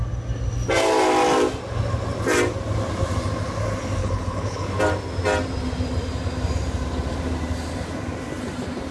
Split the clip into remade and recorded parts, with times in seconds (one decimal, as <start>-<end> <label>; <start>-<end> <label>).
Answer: 0.0-4.0 recorded; 4.0-4.7 remade; 4.7-8.9 recorded